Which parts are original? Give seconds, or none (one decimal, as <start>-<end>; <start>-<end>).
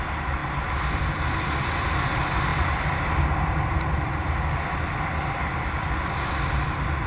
0.0-7.1